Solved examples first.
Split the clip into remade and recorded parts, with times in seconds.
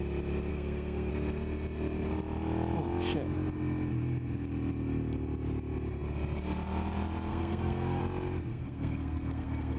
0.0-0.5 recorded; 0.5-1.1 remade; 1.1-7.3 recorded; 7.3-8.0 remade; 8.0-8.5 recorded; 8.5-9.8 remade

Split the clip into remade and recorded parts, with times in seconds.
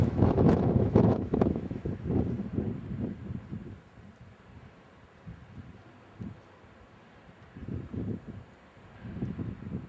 0.0-1.9 remade; 1.9-9.9 recorded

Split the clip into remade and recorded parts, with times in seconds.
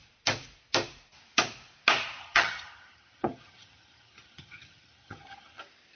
0.0-2.2 recorded; 2.2-5.6 remade; 5.6-6.0 recorded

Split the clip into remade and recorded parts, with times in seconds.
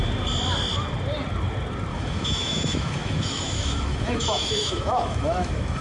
0.0-1.9 recorded; 1.9-5.8 remade